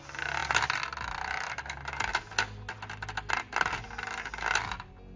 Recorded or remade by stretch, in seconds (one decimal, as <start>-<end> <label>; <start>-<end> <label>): 0.0-5.2 recorded